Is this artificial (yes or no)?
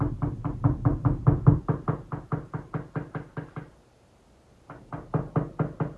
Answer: no